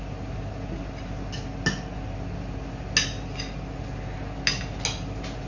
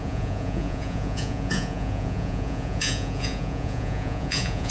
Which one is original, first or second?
first